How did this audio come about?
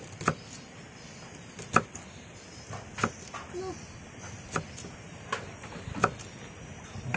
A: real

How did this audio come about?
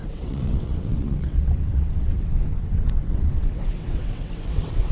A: fake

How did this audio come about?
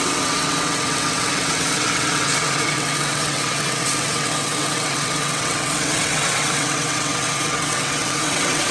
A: fake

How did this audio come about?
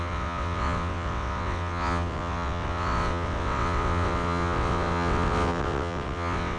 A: fake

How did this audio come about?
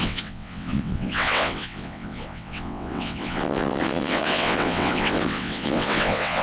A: fake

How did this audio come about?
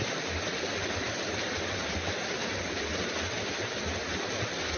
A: real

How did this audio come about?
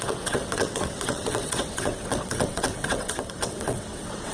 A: fake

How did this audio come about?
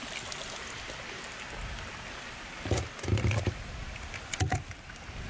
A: real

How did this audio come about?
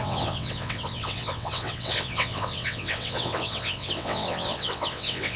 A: fake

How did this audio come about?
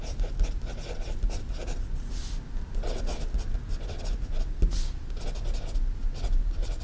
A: real